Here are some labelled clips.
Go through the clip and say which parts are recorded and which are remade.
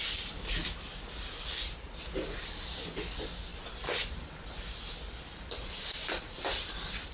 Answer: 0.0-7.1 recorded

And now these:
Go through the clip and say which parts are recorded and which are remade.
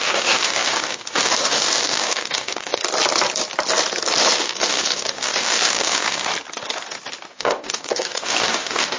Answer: 0.0-2.8 remade; 2.8-4.4 recorded; 4.4-6.3 remade; 6.3-7.3 recorded; 7.3-9.0 remade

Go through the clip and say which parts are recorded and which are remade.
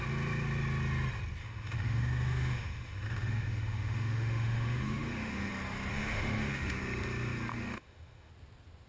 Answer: 0.0-1.4 recorded; 1.4-5.5 remade; 5.5-5.9 recorded; 5.9-6.8 remade; 6.8-7.5 recorded; 7.5-8.3 remade; 8.3-8.9 recorded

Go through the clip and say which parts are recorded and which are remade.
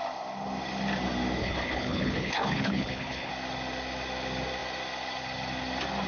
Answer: 0.0-1.4 recorded; 1.4-3.3 remade; 3.3-6.1 recorded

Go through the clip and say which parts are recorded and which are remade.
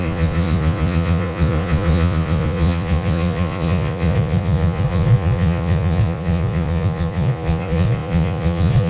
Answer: 0.0-8.9 remade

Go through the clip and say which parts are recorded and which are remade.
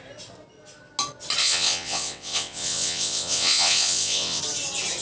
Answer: 0.0-1.4 recorded; 1.4-4.4 remade; 4.4-5.0 recorded